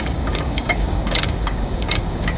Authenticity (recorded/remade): remade